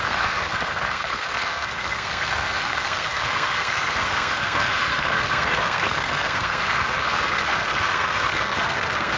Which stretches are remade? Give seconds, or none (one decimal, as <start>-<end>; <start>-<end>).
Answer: 0.0-9.2